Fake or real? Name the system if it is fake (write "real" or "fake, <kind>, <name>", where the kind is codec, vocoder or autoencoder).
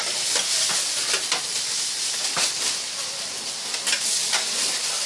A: real